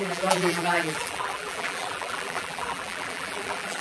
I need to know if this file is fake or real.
fake